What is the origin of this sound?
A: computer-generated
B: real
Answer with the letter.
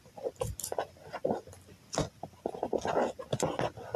B